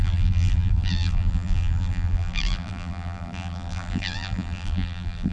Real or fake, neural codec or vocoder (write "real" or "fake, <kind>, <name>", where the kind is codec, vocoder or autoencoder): fake, vocoder, BigVGAN v2